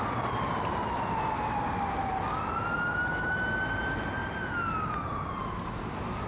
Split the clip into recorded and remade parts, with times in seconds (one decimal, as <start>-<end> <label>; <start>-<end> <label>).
0.0-6.3 recorded